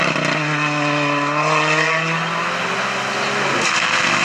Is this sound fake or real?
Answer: real